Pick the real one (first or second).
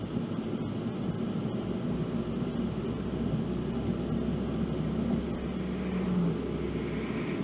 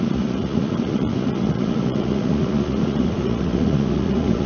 first